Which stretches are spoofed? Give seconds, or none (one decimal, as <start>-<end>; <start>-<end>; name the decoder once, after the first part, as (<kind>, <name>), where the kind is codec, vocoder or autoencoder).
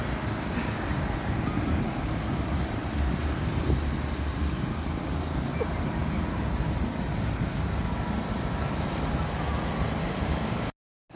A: none